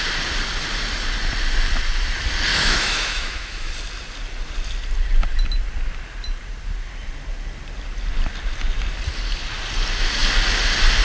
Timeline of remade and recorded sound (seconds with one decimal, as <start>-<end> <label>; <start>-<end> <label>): 0.0-2.5 recorded; 2.5-3.7 remade; 3.7-11.0 recorded